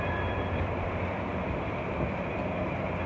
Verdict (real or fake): fake